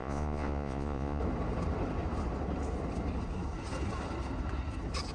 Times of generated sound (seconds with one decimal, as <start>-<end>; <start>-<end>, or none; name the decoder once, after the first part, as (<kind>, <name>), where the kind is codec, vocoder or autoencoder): 0.0-1.2 (vocoder, Vocos)